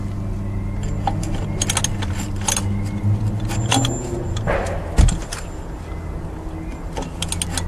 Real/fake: real